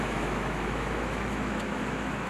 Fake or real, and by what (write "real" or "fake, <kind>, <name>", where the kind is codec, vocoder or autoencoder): fake, autoencoder, DAC-VAE